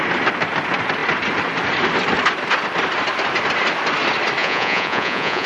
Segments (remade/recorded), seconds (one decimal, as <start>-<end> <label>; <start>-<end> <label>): 0.0-4.4 recorded; 4.4-5.5 remade